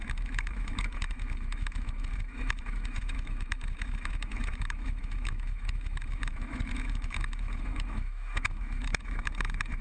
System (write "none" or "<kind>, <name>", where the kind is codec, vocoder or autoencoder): autoencoder, DAC-VAE